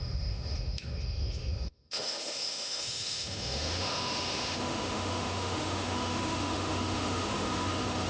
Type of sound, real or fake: fake